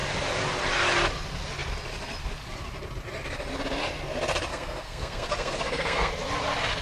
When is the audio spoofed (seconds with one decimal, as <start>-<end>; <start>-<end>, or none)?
4.5-6.1